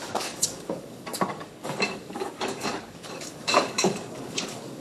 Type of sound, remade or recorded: remade